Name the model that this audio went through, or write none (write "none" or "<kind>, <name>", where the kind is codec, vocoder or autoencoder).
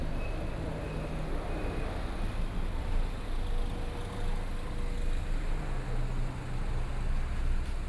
none